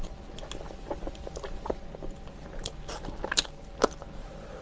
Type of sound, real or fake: real